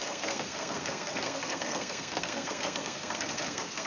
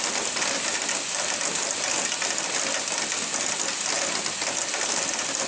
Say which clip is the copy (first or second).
first